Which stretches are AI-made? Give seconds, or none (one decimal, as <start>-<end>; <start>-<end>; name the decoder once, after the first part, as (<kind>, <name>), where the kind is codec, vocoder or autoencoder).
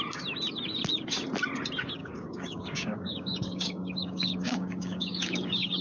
2.0-5.8 (codec, DAC)